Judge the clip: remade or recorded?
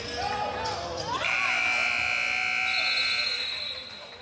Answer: recorded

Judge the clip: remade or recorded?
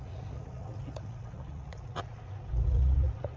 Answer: remade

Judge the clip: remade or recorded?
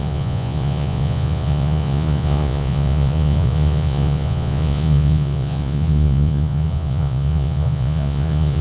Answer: remade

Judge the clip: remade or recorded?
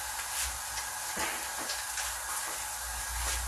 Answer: recorded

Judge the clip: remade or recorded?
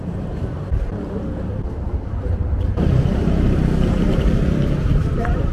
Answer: remade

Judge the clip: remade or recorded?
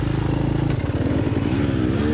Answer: recorded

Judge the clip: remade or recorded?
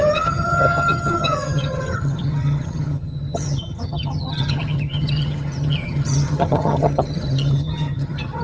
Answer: remade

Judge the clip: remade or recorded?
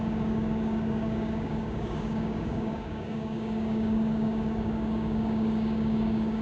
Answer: remade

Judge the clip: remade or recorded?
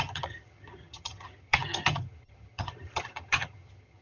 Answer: remade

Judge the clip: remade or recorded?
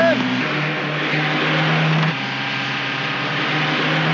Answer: recorded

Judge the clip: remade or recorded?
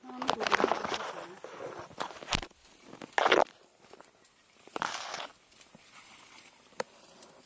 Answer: recorded